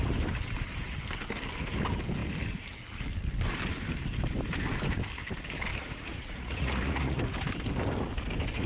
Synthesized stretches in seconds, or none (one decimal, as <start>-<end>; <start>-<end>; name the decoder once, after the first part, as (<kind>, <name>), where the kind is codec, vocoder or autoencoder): 5.7-7.2 (vocoder, Vocos)